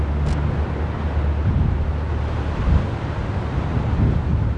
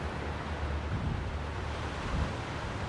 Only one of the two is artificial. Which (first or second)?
second